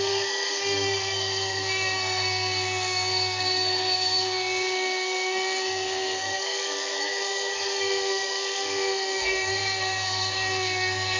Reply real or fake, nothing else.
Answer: fake